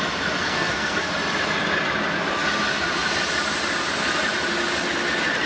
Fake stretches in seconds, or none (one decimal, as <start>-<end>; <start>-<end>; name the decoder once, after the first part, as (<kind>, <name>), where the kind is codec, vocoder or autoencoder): 0.4-1.1 (codec, SNAC)